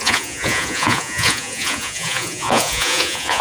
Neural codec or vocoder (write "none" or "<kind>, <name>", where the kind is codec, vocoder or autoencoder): vocoder, Vocos